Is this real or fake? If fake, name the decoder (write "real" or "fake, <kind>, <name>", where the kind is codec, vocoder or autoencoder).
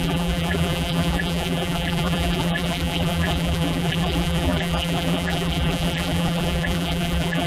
fake, vocoder, BigVGAN v2